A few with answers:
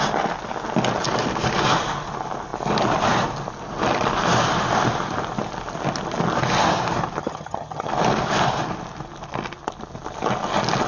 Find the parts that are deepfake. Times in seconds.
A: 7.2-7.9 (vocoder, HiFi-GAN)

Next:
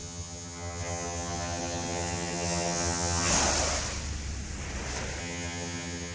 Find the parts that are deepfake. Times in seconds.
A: 0.0-3.3 (vocoder, HiFi-GAN); 5.2-6.1